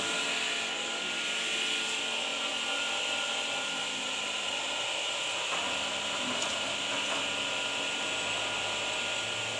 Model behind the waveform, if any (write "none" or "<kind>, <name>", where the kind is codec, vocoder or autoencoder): none